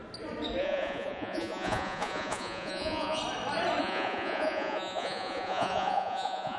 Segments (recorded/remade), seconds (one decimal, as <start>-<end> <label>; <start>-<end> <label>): 0.0-0.6 recorded; 0.6-3.2 remade; 3.2-3.8 recorded; 3.8-6.6 remade